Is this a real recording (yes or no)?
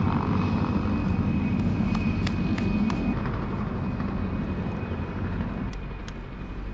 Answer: yes